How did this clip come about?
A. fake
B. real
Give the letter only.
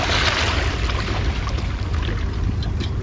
B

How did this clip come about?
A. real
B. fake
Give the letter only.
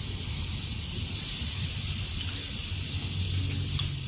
A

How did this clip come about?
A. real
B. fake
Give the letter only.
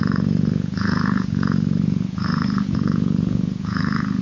B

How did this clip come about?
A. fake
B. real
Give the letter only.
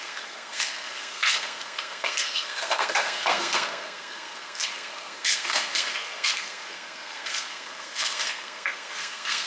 A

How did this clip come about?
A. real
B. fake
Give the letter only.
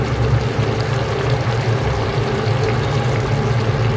A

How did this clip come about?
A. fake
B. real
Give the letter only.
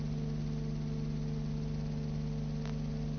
B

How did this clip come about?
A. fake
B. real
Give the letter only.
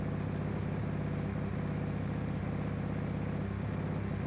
B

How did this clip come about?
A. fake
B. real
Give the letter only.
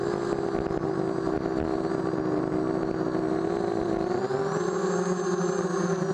B